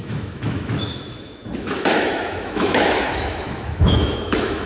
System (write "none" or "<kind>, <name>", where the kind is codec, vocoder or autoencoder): autoencoder, DAC-VAE